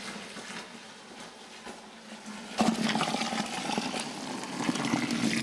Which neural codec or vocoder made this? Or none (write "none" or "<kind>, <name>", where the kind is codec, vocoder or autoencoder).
none